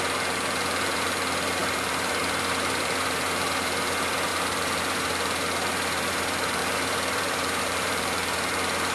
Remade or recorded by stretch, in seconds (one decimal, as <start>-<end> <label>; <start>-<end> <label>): 0.0-8.9 remade